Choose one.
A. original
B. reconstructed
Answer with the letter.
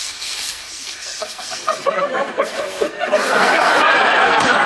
B